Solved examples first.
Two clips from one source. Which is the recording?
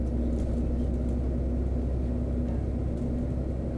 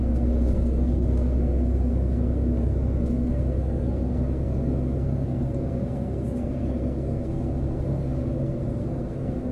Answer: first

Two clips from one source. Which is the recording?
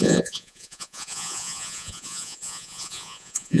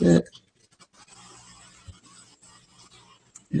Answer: second